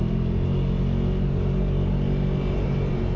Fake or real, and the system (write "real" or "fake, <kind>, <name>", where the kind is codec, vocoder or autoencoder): real